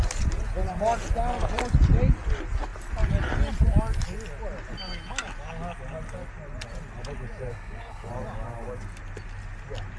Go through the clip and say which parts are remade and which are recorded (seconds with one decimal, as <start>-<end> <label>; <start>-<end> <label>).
0.0-7.5 recorded; 7.5-8.1 remade; 8.1-10.0 recorded